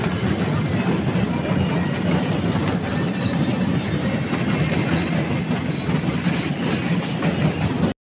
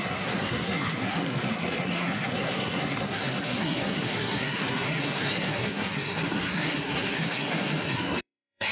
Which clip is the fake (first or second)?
second